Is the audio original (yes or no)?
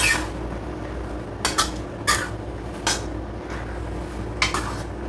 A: yes